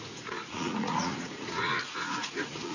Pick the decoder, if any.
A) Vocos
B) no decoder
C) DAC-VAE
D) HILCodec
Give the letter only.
A